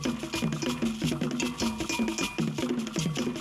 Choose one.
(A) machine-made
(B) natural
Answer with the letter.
B